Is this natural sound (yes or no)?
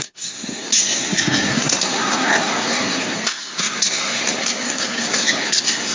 no